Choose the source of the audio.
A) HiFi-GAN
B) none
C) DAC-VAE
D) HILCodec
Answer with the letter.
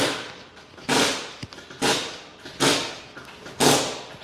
B